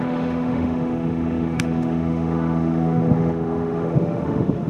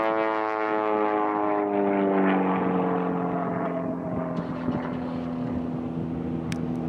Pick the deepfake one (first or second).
first